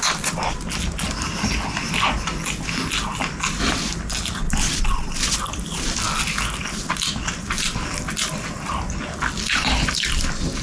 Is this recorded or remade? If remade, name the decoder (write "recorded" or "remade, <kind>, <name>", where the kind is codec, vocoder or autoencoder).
recorded